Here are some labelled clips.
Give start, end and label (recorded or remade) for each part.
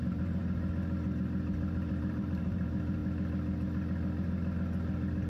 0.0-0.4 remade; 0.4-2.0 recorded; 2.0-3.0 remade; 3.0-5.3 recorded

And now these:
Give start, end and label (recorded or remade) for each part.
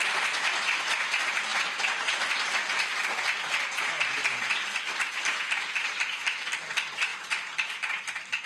0.0-1.5 remade; 1.5-5.6 recorded; 5.6-7.1 remade; 7.1-8.1 recorded; 8.1-8.5 remade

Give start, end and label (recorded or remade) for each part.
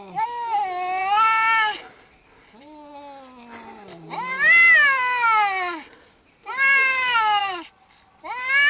0.0-7.4 recorded; 7.4-8.0 remade; 8.0-8.7 recorded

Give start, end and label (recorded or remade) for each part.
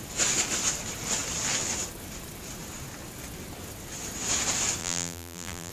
0.0-4.8 recorded; 4.8-5.7 remade